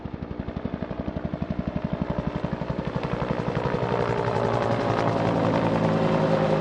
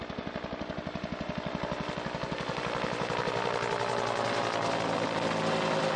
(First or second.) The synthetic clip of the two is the first